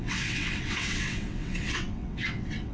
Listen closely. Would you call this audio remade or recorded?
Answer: remade